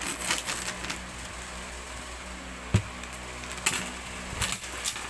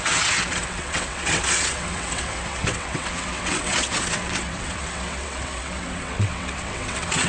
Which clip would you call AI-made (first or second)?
second